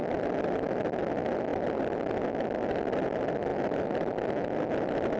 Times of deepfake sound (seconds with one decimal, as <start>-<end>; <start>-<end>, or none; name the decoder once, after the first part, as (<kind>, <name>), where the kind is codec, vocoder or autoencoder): none